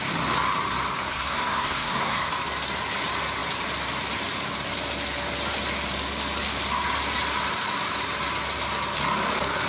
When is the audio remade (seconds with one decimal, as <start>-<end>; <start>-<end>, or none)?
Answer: 1.1-2.3